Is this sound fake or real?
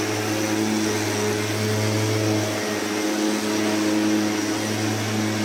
real